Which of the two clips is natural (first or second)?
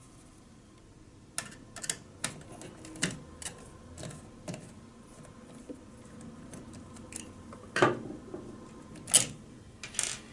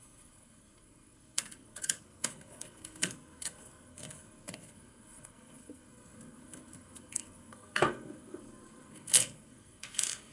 first